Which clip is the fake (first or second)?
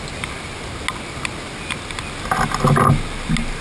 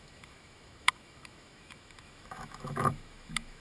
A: second